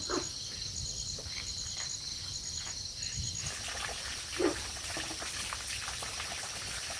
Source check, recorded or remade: recorded